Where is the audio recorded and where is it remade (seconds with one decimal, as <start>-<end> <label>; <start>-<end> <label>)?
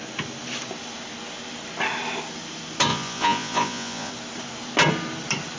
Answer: 0.0-2.9 recorded; 2.9-4.1 remade; 4.1-5.6 recorded